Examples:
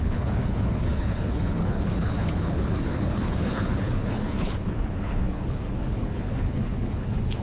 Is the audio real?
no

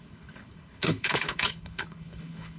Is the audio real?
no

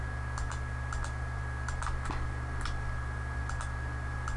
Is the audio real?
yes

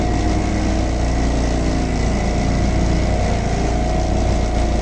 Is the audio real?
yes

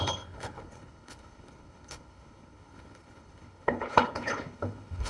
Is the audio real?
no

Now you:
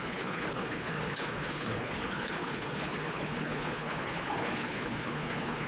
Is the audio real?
no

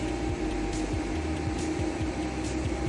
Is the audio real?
yes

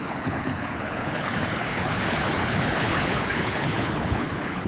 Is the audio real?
no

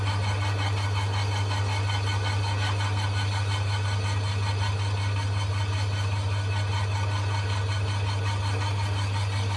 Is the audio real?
yes